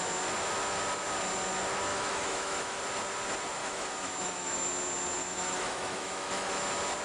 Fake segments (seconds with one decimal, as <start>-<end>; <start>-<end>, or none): 1.9-2.8; 3.6-4.7; 5.2-6.5